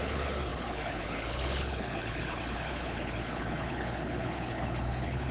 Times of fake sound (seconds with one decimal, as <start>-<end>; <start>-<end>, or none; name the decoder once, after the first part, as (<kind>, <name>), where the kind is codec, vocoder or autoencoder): 0.0-5.3 (codec, HILCodec)